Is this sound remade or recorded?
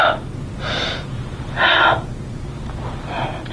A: recorded